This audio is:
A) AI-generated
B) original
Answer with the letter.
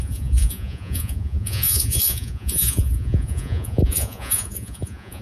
A